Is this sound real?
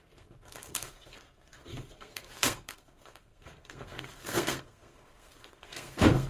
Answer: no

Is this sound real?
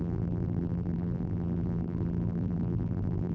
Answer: no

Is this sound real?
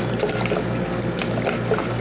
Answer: yes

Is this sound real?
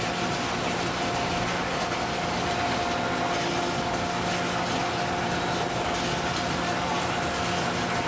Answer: yes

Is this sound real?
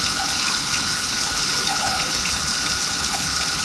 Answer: no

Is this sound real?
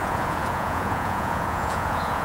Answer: no